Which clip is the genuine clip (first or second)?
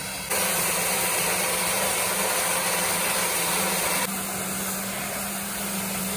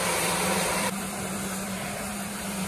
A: first